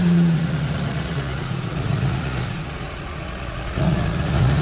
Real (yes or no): no